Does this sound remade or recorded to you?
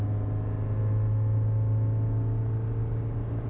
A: recorded